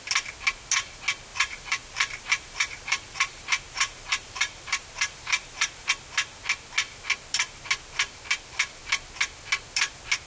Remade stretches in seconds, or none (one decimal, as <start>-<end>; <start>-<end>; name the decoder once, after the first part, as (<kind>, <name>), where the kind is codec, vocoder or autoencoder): 1.3-5.9 (vocoder, BigVGAN v2)